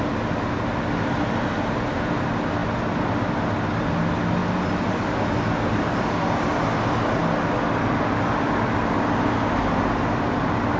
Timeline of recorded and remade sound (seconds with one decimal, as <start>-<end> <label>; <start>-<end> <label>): 0.0-10.8 recorded